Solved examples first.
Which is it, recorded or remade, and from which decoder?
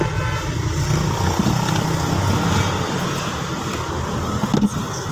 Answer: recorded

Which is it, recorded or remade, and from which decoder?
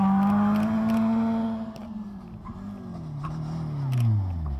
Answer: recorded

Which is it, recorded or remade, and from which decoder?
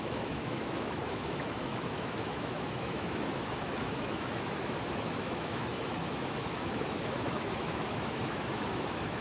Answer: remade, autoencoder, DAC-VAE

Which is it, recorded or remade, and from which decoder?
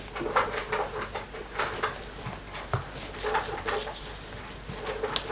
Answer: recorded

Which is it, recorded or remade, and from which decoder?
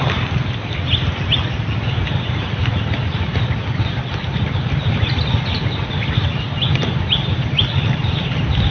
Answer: recorded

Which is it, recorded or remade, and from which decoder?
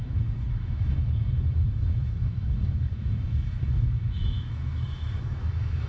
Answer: remade, autoencoder, DAC-VAE